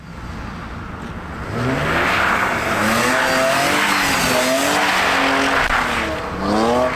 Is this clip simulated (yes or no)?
no